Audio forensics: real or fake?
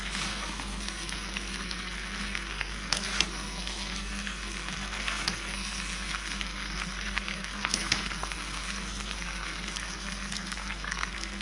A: fake